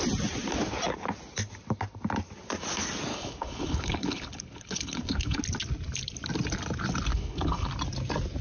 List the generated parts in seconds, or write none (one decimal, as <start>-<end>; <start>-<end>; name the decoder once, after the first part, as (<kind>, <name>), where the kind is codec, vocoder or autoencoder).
3.1-5.4 (codec, HILCodec); 7.1-7.7